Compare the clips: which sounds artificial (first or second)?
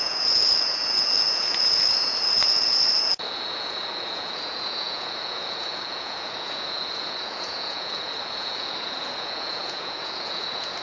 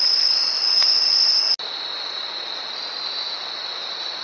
first